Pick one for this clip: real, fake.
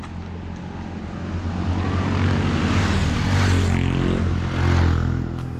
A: real